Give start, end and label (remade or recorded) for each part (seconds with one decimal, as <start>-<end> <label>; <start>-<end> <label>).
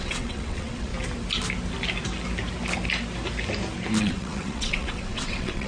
0.0-0.9 remade; 0.9-4.0 recorded; 4.0-5.7 remade